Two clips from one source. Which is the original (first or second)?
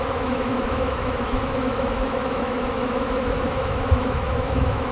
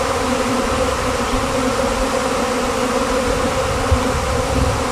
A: second